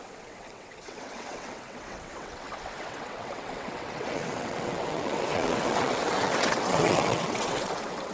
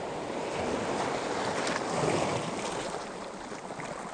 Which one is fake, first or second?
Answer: first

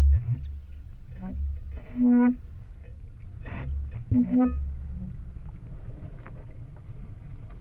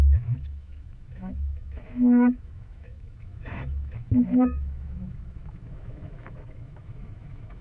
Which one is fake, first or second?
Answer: second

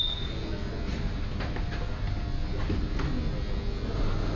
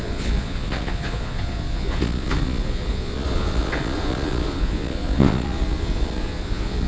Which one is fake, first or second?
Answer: second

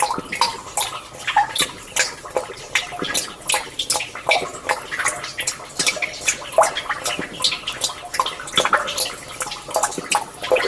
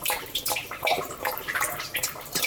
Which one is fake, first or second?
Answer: second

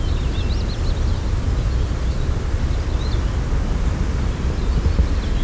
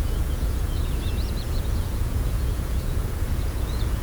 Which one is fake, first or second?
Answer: second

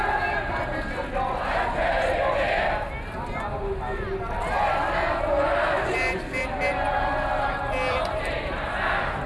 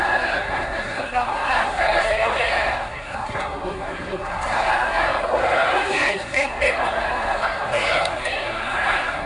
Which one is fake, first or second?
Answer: second